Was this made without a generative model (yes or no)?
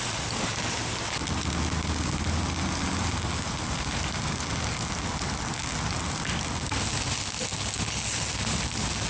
yes